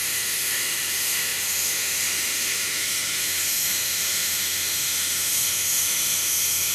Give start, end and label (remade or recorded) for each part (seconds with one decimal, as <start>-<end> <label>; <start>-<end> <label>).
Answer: 0.0-6.7 remade